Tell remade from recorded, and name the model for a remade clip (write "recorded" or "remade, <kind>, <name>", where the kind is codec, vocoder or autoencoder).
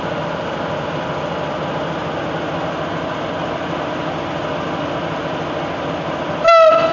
recorded